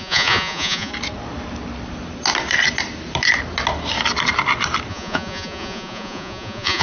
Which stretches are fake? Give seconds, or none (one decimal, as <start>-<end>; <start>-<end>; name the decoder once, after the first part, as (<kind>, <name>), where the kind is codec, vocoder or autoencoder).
0.0-0.9 (vocoder, Vocos); 4.9-6.8